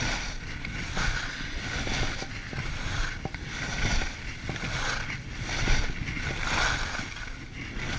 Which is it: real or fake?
real